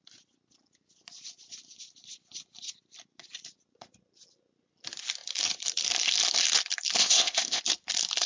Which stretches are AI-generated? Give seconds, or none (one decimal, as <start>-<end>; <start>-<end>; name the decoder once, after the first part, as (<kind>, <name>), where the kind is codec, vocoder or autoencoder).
7.0-7.6 (codec, ZipCodec)